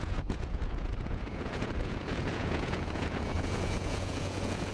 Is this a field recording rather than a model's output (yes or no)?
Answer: no